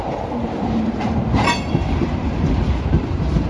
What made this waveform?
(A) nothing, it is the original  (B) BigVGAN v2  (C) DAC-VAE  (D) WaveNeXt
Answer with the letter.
B